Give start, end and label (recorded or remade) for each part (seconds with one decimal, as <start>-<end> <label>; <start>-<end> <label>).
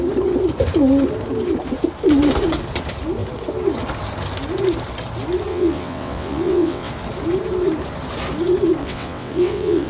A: 0.0-5.5 recorded; 5.5-6.9 remade; 6.9-8.8 recorded; 8.8-9.9 remade